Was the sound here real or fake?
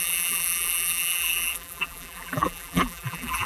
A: fake